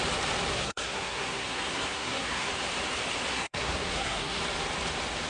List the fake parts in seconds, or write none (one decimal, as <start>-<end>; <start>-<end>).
0.5-2.5; 3.3-4.4